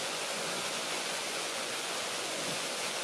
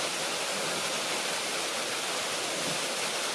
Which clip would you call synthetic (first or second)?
first